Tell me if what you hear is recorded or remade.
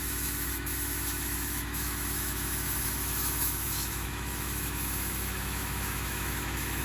remade